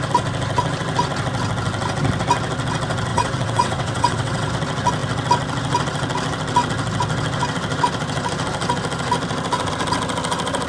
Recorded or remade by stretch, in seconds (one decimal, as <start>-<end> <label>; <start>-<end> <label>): 0.0-3.1 recorded; 3.1-4.5 remade; 4.5-10.7 recorded